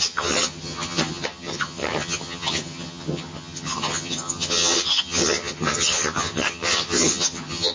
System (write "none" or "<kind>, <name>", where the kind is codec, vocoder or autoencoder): vocoder, HiFi-GAN